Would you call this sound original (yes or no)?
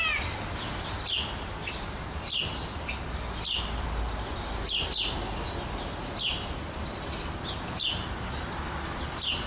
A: yes